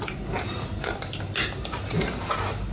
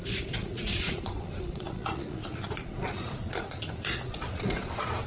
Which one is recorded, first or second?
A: first